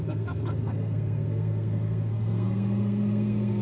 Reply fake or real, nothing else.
fake